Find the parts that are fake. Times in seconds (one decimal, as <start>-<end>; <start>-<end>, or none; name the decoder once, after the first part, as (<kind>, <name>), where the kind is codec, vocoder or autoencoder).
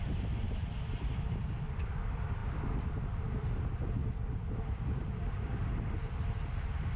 0.0-2.4 (vocoder, BigVGAN v2); 3.2-4.0; 4.5-7.0